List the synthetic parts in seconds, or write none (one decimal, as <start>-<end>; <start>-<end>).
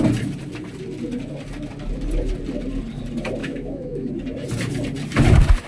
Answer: 3.4-4.1